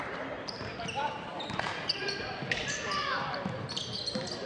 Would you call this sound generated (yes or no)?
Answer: yes